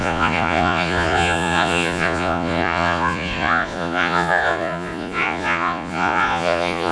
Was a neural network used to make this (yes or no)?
yes